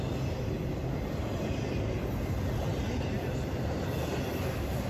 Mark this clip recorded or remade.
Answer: recorded